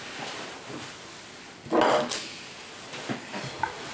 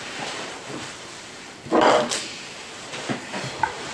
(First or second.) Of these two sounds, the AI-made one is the second